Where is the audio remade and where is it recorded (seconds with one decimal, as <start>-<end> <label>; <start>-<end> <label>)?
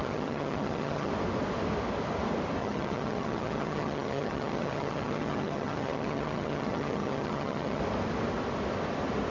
0.0-1.1 remade; 1.1-2.6 recorded; 2.6-7.8 remade; 7.8-9.3 recorded